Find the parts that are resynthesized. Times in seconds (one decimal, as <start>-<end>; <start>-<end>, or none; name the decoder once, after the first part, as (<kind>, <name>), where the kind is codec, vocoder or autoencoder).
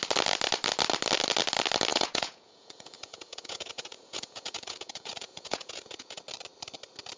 1.9-6.2 (vocoder, Vocos)